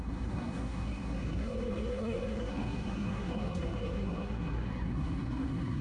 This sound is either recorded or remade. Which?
remade